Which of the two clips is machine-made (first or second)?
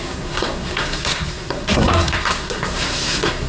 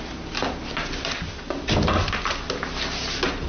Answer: first